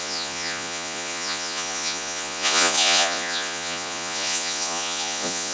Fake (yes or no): yes